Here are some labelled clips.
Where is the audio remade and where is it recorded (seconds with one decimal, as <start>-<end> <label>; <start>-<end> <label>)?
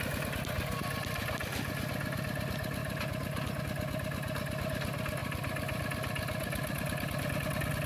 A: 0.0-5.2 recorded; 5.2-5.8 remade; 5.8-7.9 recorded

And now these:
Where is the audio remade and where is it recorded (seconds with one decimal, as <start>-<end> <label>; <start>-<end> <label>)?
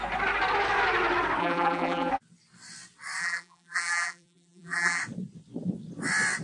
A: 0.0-1.4 recorded; 1.4-2.1 remade; 2.1-3.2 recorded; 3.2-5.0 remade; 5.0-6.4 recorded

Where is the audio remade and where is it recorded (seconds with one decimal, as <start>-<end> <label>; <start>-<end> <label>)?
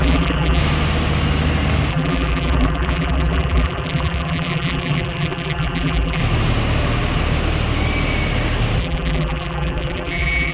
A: 0.0-0.6 remade; 0.6-1.9 recorded; 1.9-6.2 remade; 6.2-8.8 recorded; 8.8-10.5 remade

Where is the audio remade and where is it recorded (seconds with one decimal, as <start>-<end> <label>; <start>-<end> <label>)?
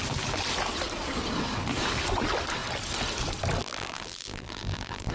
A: 0.0-3.6 recorded; 3.6-5.1 remade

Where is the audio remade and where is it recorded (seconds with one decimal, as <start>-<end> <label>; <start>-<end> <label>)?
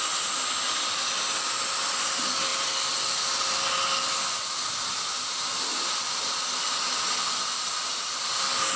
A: 0.0-2.5 recorded; 2.5-3.8 remade; 3.8-5.7 recorded; 5.7-6.6 remade; 6.6-8.8 recorded